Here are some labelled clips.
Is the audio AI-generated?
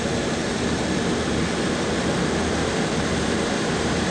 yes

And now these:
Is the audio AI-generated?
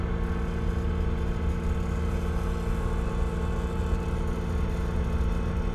no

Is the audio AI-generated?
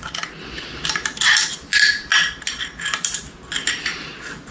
no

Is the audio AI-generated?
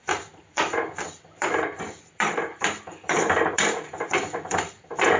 yes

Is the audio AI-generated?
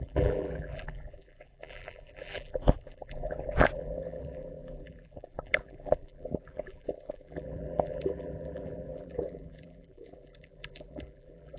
yes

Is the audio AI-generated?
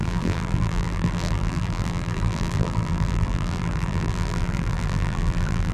yes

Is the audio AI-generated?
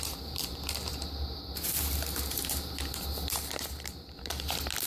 yes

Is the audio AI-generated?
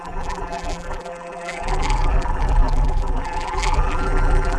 yes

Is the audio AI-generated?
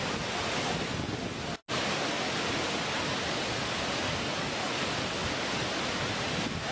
no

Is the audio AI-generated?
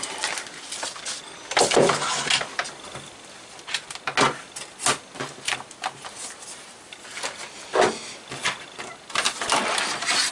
no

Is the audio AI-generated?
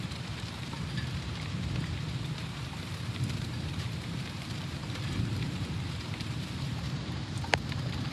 yes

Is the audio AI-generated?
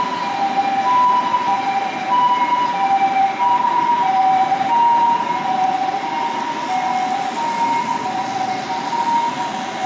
no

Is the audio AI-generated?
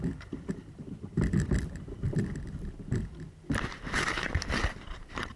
yes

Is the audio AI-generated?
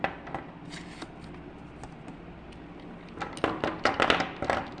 no